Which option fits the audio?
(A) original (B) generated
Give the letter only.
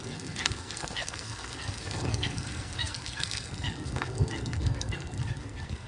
B